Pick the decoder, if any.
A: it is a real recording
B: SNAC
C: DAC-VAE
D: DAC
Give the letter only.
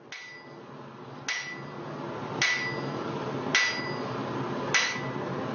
A